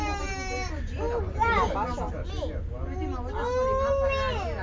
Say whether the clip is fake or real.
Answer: real